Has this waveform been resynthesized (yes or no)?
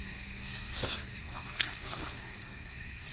yes